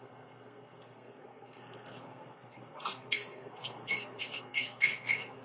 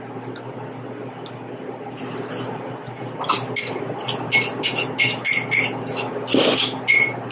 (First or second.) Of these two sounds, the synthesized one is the first